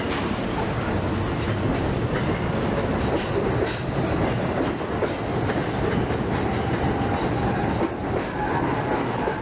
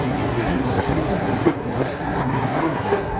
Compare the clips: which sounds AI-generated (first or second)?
second